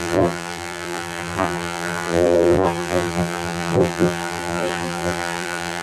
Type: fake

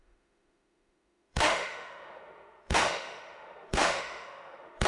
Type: fake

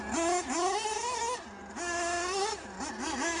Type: real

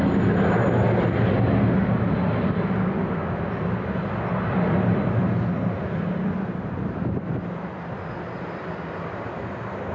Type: real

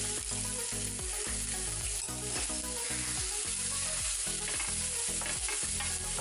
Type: real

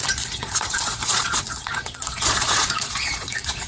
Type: fake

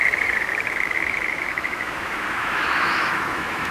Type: fake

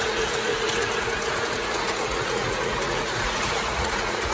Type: fake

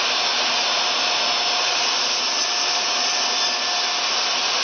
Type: real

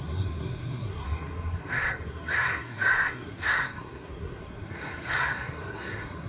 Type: fake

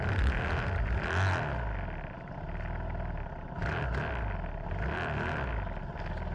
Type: real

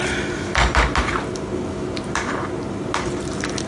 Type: real